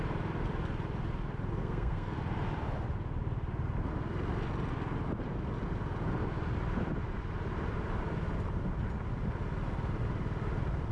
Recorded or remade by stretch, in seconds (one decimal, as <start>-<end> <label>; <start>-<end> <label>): 0.0-1.6 recorded; 1.6-2.2 remade; 2.2-10.9 recorded